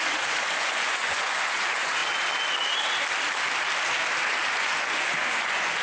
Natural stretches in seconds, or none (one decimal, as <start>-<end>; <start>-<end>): 2.0-4.5